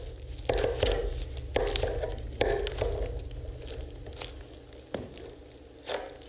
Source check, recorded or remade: recorded